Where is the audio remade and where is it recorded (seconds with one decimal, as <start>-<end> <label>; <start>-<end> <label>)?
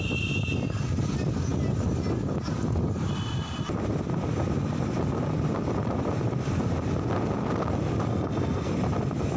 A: 0.0-8.1 recorded; 8.1-8.7 remade; 8.7-9.4 recorded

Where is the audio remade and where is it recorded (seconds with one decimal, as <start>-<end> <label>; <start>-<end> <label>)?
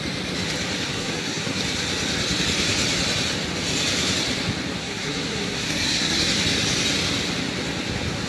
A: 0.0-0.9 recorded; 0.9-1.6 remade; 1.6-4.8 recorded; 4.8-6.4 remade; 6.4-8.3 recorded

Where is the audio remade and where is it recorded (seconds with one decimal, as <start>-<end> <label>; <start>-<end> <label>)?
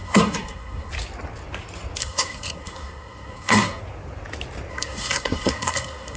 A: 0.0-0.9 remade; 0.9-2.0 recorded; 2.0-3.8 remade; 3.8-4.7 recorded; 4.7-6.2 remade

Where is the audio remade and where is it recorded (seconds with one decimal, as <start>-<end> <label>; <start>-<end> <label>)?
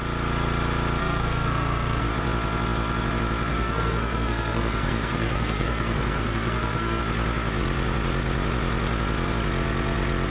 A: 0.0-1.0 recorded; 1.0-2.1 remade; 2.1-3.5 recorded; 3.5-7.0 remade; 7.0-10.3 recorded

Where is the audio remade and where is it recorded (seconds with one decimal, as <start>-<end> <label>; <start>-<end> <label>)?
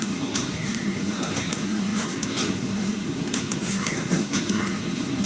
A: 0.0-5.3 remade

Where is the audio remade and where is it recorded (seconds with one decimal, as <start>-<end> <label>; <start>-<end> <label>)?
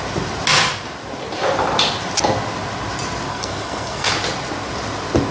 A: 0.0-3.3 recorded; 3.3-4.1 remade; 4.1-5.3 recorded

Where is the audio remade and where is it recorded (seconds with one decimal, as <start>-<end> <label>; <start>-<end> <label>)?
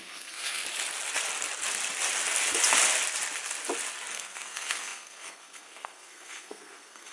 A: 0.0-0.6 remade; 0.6-4.1 recorded; 4.1-7.1 remade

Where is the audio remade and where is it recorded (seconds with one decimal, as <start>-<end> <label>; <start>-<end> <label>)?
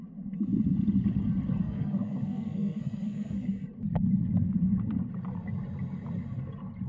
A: 0.0-1.6 recorded; 1.6-3.5 remade; 3.5-6.9 recorded